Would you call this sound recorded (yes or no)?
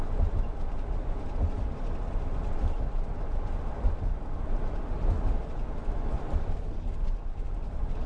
yes